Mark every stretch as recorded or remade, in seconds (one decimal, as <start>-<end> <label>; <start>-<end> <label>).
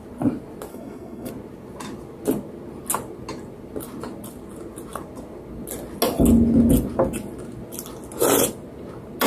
0.0-0.7 recorded; 0.7-1.3 remade; 1.3-9.3 recorded